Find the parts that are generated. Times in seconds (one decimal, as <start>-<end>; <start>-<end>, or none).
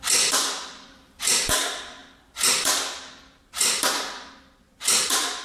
0.0-5.4